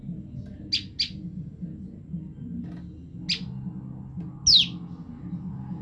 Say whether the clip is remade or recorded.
recorded